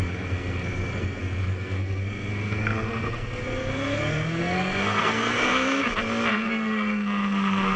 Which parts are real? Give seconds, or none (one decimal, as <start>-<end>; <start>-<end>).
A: 5.8-6.3